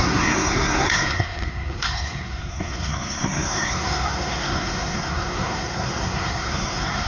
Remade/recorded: remade